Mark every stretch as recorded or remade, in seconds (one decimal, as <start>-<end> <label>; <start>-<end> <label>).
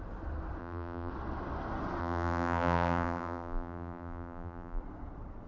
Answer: 0.0-0.6 recorded; 0.6-1.1 remade; 1.1-2.0 recorded; 2.0-4.8 remade; 4.8-5.5 recorded